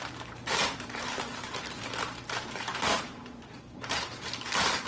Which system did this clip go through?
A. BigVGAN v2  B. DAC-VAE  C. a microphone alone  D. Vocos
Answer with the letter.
A